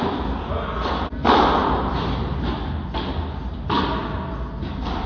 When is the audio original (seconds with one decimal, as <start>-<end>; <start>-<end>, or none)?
0.0-5.1